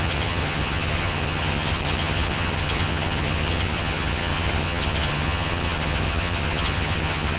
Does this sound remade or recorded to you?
remade